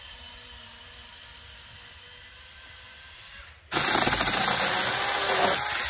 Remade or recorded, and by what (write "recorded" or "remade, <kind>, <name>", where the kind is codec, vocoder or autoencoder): recorded